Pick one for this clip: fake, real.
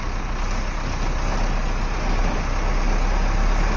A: real